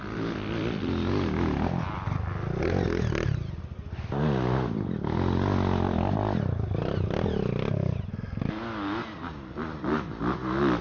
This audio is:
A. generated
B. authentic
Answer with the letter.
B